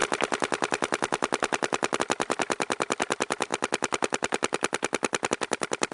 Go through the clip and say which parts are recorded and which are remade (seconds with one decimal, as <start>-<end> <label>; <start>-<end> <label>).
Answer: 0.0-5.9 recorded